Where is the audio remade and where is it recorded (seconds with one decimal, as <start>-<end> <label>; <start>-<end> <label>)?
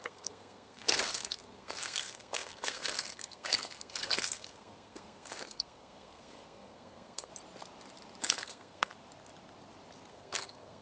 0.0-7.3 remade; 7.3-8.2 recorded; 8.2-8.9 remade; 8.9-10.1 recorded; 10.1-10.8 remade